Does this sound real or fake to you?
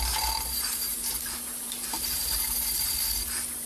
real